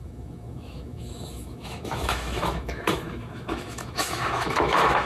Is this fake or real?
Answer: fake